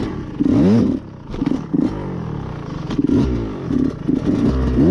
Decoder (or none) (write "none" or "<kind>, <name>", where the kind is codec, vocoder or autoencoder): none